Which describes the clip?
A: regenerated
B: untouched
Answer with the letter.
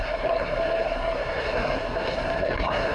A